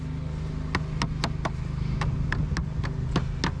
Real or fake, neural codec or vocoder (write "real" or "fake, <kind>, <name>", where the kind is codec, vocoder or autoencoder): real